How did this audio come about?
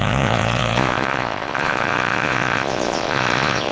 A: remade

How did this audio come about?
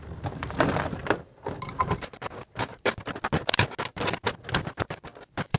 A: recorded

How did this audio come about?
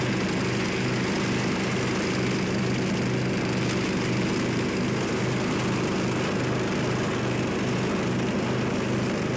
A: recorded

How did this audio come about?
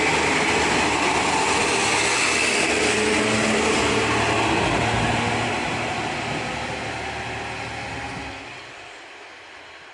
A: recorded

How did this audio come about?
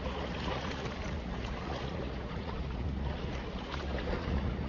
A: remade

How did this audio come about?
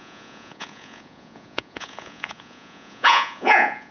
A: remade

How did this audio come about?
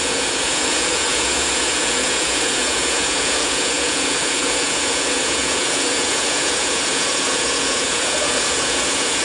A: remade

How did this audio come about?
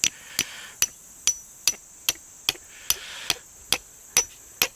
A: recorded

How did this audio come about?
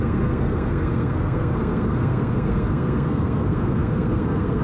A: remade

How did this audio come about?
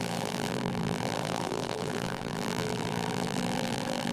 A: remade